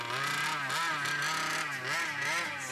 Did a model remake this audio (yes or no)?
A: no